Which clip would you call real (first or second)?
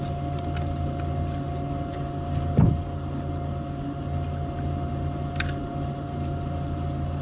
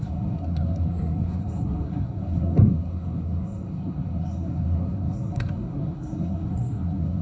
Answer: first